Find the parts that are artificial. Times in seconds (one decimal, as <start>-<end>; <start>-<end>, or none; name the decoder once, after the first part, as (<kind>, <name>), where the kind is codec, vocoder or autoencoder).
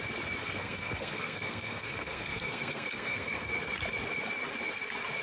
0.4-3.5 (codec, SNAC)